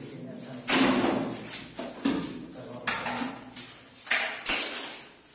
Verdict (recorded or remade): recorded